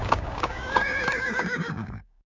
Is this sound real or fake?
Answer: fake